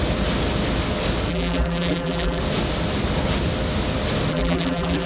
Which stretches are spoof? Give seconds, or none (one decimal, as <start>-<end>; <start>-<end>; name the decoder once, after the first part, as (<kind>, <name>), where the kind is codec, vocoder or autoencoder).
1.3-2.4 (vocoder, BigVGAN v2); 4.3-5.1